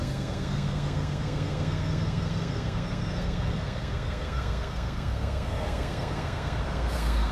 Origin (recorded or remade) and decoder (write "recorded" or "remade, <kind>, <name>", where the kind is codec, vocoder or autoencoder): remade, codec, SNAC